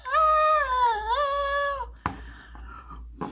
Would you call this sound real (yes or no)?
yes